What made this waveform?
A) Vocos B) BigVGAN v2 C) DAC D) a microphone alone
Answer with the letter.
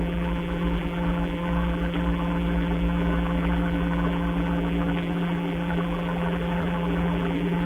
B